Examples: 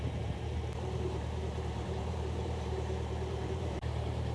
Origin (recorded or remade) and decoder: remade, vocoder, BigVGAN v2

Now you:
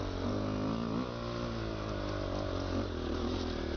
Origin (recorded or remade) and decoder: recorded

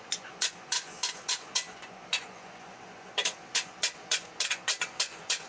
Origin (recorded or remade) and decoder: remade, vocoder, Vocos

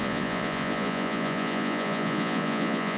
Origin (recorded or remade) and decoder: remade, vocoder, Vocos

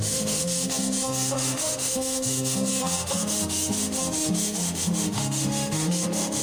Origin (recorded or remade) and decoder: remade, autoencoder, DAC-VAE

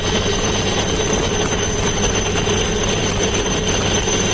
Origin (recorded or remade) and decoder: recorded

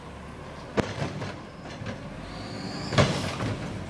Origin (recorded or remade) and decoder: recorded